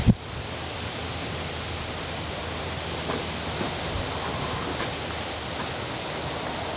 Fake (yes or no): no